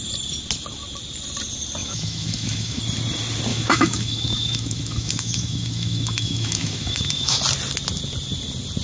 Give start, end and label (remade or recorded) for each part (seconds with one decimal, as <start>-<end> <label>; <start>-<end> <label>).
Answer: 0.0-1.8 recorded; 1.8-2.8 remade; 2.8-3.5 recorded; 3.5-7.4 remade; 7.4-8.8 recorded